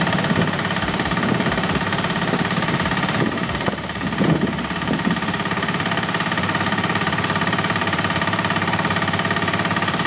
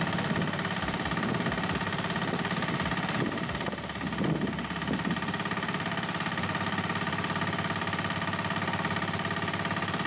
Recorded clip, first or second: second